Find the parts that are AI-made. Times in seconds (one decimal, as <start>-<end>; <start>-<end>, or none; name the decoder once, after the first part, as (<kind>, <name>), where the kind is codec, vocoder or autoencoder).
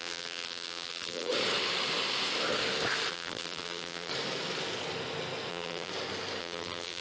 0.0-1.3 (vocoder, BigVGAN v2); 3.1-4.1; 5.5-5.9; 6.4-7.0